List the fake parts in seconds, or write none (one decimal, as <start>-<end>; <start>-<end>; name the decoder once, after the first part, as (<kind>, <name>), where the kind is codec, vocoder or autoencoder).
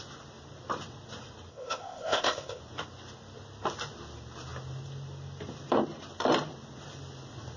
1.5-2.6 (codec, ZipCodec)